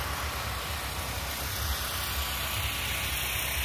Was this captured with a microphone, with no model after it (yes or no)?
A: yes